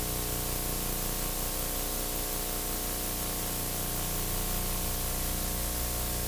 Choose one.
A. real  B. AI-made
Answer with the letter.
A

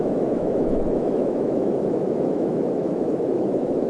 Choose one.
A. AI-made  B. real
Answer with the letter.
A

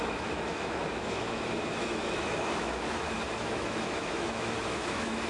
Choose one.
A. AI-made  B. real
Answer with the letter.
A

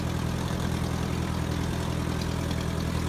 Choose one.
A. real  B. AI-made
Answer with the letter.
A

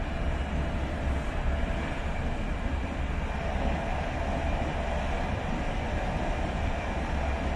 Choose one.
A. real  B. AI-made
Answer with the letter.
A